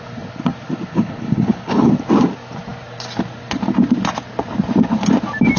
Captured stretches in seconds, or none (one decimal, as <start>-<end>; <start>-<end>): 0.0-0.9; 1.9-5.6